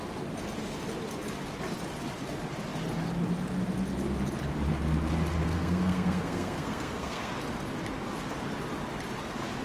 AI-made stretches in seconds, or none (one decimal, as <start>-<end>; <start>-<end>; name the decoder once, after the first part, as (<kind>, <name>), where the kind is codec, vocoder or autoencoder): 5.4-7.3 (codec, SNAC)